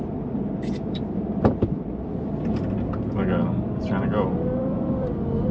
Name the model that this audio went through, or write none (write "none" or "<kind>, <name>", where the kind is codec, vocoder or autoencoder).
vocoder, BigVGAN v2